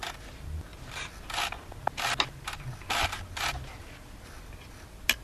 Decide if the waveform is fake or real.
real